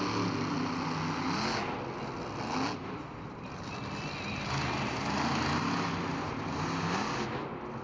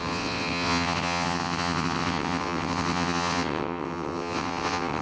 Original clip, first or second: first